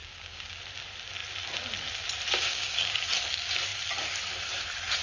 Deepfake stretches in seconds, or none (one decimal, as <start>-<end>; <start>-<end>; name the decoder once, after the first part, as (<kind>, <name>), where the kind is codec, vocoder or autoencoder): 0.0-0.6 (codec, DAC); 2.5-3.1